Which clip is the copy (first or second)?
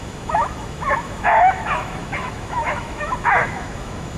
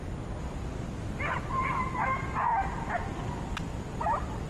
first